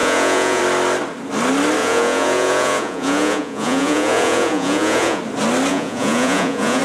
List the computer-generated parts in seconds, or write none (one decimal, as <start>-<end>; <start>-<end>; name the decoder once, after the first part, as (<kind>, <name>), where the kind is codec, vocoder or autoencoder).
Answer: 0.0-0.6 (vocoder, Vocos); 1.8-5.2; 5.7-6.8